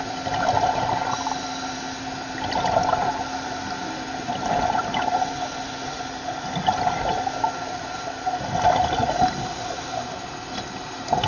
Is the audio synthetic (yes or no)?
no